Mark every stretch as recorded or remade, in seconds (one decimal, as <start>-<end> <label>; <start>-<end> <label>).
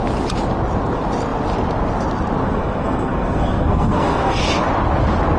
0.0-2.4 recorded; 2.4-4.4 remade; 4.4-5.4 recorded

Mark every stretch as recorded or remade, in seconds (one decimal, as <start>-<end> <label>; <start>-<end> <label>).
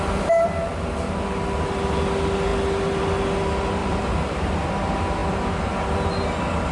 0.0-3.8 recorded; 3.8-4.4 remade; 4.4-6.7 recorded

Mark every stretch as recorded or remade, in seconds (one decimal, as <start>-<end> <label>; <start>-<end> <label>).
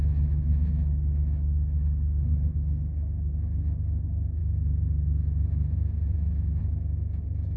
0.0-7.6 recorded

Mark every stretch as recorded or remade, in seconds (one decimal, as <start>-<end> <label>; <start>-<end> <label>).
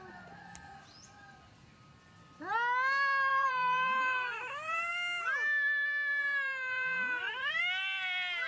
0.0-3.3 recorded; 3.3-4.9 remade; 4.9-6.1 recorded; 6.1-7.6 remade; 7.6-8.5 recorded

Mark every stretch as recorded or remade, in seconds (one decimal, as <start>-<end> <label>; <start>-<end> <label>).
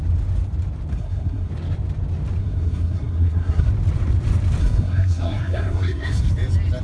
0.0-0.9 recorded; 0.9-1.5 remade; 1.5-2.4 recorded; 2.4-3.7 remade; 3.7-4.6 recorded; 4.6-6.3 remade; 6.3-6.8 recorded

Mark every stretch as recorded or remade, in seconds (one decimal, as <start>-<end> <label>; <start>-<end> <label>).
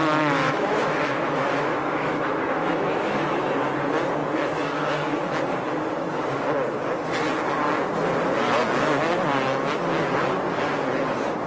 0.0-3.5 remade; 3.5-4.2 recorded; 4.2-5.3 remade; 5.3-11.5 recorded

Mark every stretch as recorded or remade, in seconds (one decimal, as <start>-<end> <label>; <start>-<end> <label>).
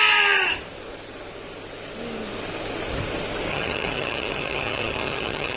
0.0-3.5 recorded; 3.5-5.6 remade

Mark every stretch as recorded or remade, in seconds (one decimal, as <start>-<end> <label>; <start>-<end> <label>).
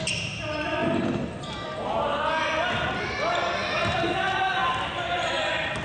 0.0-4.6 recorded; 4.6-5.3 remade; 5.3-5.8 recorded